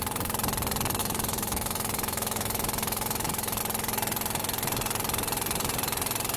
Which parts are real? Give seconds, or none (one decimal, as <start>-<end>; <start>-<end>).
0.0-1.0; 3.6-6.4